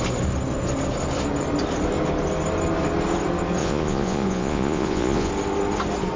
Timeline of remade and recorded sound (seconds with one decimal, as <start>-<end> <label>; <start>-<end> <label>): 0.0-3.6 recorded; 3.6-5.3 remade; 5.3-6.2 recorded

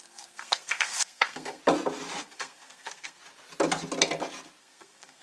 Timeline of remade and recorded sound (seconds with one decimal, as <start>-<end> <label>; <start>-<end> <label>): 0.0-1.6 remade; 1.6-2.2 recorded; 2.2-3.2 remade; 3.2-4.6 recorded; 4.6-5.2 remade

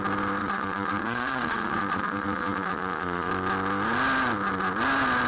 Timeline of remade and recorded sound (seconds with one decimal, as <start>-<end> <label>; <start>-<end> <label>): 0.0-0.4 recorded; 0.4-3.3 remade; 3.3-5.3 recorded

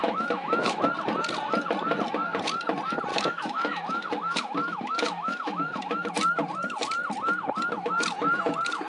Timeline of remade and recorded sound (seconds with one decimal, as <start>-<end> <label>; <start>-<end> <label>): 0.0-0.8 remade; 0.8-3.1 recorded; 3.1-6.1 remade; 6.1-8.9 recorded

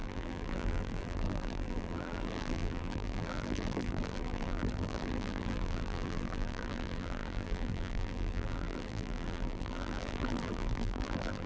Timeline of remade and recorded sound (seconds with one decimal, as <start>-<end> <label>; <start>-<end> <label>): 0.0-11.5 remade

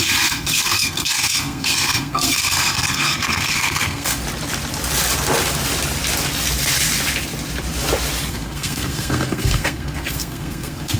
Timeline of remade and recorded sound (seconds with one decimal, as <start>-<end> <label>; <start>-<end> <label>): 0.0-4.2 remade; 4.2-8.3 recorded; 8.3-11.0 remade